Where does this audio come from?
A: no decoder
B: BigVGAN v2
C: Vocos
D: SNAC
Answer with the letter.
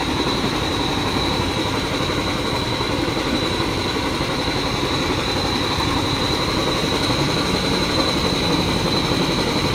B